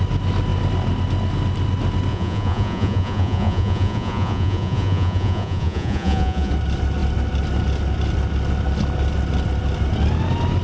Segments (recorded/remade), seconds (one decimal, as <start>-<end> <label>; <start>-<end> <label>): 0.0-2.1 recorded; 2.1-6.5 remade; 6.5-10.6 recorded